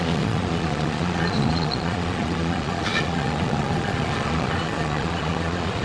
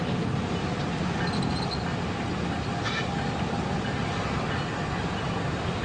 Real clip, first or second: second